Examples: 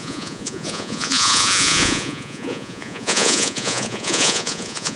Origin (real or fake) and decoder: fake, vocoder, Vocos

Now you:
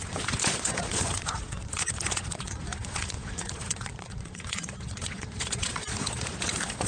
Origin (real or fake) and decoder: fake, vocoder, Vocos